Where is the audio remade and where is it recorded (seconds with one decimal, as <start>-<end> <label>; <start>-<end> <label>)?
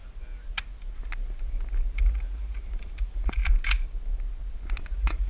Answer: 0.0-2.0 recorded; 2.0-3.4 remade; 3.4-4.8 recorded; 4.8-5.3 remade